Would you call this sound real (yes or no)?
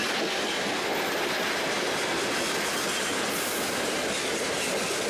yes